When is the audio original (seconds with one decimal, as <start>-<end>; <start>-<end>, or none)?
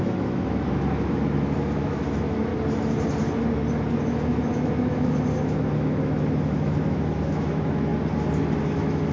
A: 2.5-4.0; 7.9-8.6